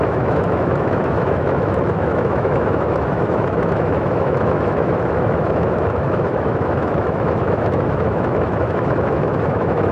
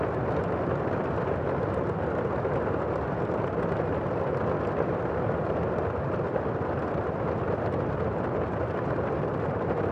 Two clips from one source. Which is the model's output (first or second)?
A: first